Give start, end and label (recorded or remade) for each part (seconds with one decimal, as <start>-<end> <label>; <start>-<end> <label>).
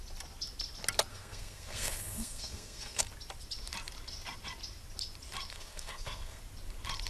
0.0-1.1 recorded; 1.1-3.0 remade; 3.0-5.5 recorded; 5.5-6.4 remade; 6.4-7.1 recorded